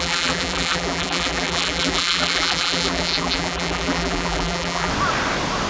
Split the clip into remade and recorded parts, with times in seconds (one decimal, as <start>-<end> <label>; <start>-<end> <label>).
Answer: 0.0-4.9 remade; 4.9-5.7 recorded